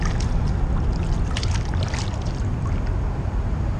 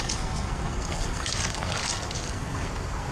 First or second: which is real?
first